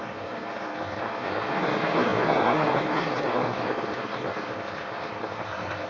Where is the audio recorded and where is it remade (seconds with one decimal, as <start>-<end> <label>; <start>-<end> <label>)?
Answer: 0.0-5.9 remade